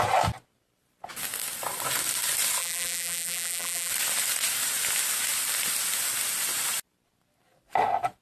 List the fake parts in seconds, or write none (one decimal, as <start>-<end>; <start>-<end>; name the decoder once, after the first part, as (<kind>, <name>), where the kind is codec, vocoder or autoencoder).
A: 2.6-3.9 (vocoder, BigVGAN v2)